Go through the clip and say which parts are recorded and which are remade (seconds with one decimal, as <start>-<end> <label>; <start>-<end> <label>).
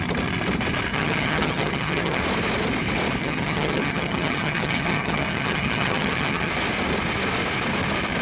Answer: 0.0-0.9 recorded; 0.9-2.2 remade; 2.2-3.2 recorded; 3.2-6.5 remade; 6.5-8.2 recorded